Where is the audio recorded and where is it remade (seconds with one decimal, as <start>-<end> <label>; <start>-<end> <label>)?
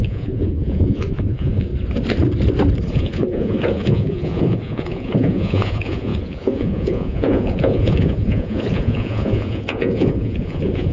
0.0-1.7 remade; 1.7-2.9 recorded; 2.9-10.9 remade